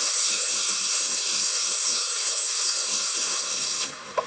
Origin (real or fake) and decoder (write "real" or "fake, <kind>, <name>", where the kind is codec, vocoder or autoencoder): fake, codec, SNAC